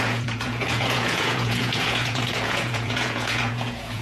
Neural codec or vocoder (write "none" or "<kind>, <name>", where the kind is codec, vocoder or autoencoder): vocoder, Vocos